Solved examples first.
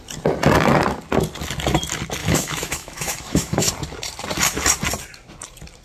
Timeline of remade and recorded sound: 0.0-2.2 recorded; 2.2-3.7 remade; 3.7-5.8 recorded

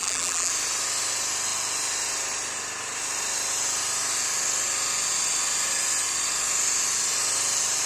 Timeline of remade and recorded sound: 0.0-0.5 remade; 0.5-7.9 recorded

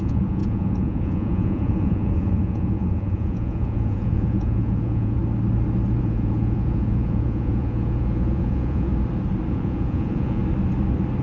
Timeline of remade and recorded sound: 0.0-5.2 remade; 5.2-6.0 recorded; 6.0-8.9 remade; 8.9-9.5 recorded; 9.5-10.4 remade; 10.4-11.2 recorded

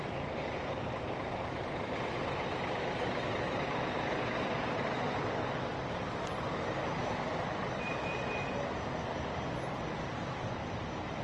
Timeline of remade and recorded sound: 0.0-11.2 recorded